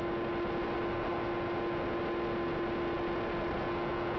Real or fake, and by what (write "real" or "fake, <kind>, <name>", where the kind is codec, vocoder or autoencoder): real